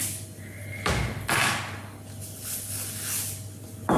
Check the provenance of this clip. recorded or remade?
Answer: recorded